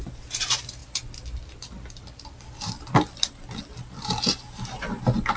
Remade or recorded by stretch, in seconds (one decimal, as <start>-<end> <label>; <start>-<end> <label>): 0.0-0.8 recorded; 0.8-3.6 remade; 3.6-5.4 recorded

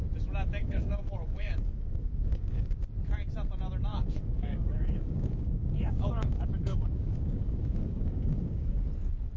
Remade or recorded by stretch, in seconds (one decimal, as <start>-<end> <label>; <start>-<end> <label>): 0.0-0.6 recorded; 0.6-2.7 remade; 2.7-3.9 recorded; 3.9-8.8 remade; 8.8-9.4 recorded

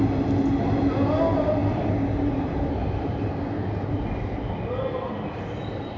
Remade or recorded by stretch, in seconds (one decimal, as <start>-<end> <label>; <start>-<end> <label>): 0.0-1.6 recorded; 1.6-3.4 remade; 3.4-6.0 recorded

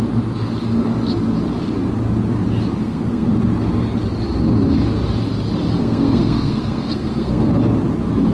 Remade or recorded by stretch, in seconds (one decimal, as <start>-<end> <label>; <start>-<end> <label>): 0.0-2.8 recorded; 2.8-3.3 remade; 3.3-5.7 recorded; 5.7-7.5 remade; 7.5-8.3 recorded

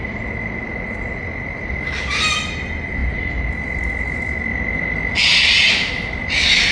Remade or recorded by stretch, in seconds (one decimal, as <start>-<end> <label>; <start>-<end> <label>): 0.0-6.7 recorded

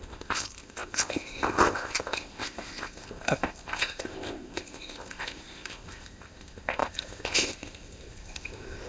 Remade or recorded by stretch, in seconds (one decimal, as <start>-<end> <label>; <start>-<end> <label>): 0.0-8.9 remade